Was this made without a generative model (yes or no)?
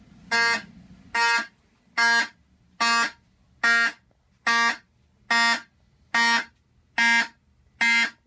yes